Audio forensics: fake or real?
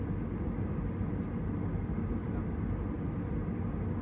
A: real